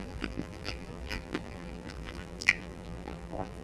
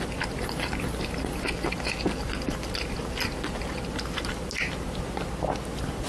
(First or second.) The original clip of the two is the second